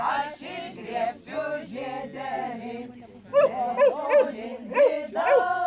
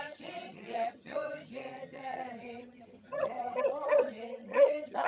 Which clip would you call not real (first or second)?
second